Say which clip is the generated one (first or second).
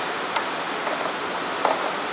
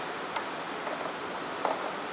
second